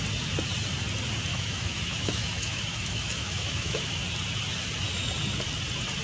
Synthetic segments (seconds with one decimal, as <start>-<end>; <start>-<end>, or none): 1.3-4.0